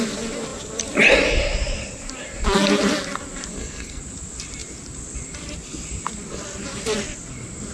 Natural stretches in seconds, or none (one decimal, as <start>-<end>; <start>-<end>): 0.0-3.5; 4.0-7.7